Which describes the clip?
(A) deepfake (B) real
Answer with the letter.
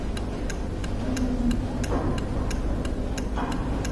B